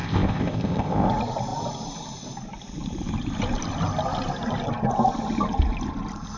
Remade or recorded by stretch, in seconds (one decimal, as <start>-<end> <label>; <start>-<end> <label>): 0.0-1.1 remade; 1.1-6.4 recorded

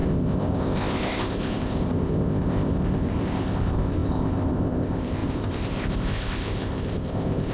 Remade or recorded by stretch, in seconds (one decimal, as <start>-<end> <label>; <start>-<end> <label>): 0.0-7.5 remade

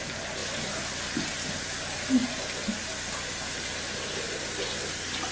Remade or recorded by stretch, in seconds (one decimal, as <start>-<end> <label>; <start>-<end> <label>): 0.0-5.3 recorded

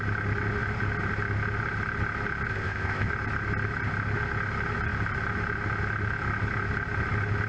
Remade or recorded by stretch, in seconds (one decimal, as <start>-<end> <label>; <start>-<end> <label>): 0.0-2.5 recorded; 2.5-3.1 remade; 3.1-7.5 recorded

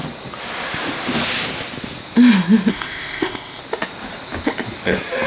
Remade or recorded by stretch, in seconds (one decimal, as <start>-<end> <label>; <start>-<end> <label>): 0.0-2.7 recorded; 2.7-3.6 remade; 3.6-5.3 recorded

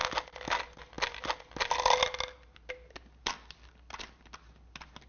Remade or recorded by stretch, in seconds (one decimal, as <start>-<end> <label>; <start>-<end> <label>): 0.0-5.1 recorded

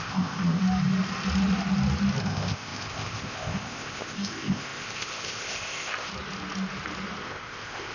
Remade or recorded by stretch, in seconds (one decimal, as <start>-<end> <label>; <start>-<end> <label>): 0.0-0.6 remade; 0.6-2.2 recorded; 2.2-6.1 remade; 6.1-7.2 recorded; 7.2-7.9 remade